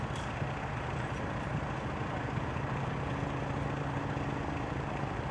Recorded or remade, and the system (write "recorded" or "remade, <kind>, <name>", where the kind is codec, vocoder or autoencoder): recorded